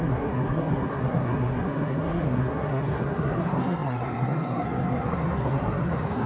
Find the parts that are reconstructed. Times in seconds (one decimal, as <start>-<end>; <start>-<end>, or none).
0.0-6.3